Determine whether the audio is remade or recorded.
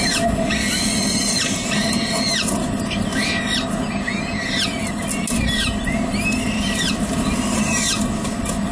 recorded